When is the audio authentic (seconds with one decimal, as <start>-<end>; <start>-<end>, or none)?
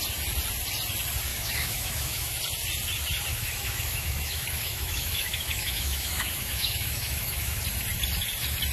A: 0.0-1.3; 2.4-3.3; 7.6-8.7